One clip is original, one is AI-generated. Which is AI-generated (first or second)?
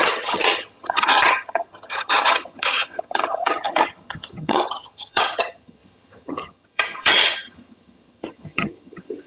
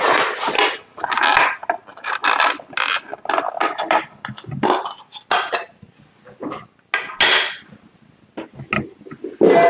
first